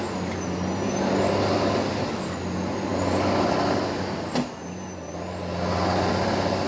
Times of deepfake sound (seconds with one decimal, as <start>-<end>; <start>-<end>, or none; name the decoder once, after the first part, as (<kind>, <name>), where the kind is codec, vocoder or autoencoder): none